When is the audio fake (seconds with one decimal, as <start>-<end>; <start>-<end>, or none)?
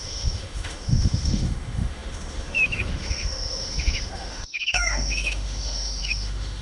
0.0-6.6